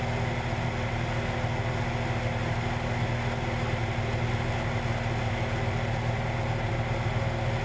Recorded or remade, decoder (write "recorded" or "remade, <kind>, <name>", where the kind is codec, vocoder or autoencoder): recorded